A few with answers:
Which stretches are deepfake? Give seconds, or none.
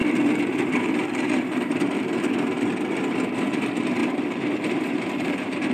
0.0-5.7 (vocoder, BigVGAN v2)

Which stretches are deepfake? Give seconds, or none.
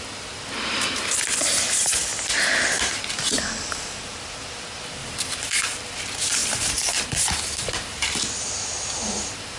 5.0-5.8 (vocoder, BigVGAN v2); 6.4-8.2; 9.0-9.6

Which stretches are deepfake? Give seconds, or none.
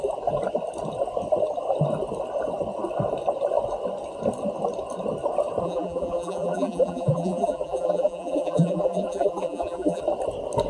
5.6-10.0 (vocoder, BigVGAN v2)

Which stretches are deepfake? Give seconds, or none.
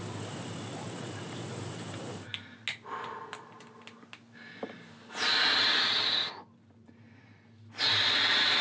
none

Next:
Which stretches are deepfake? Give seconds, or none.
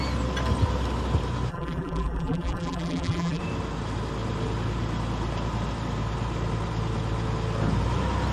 1.5-3.4 (vocoder, BigVGAN v2)